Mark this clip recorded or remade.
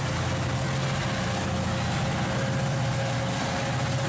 recorded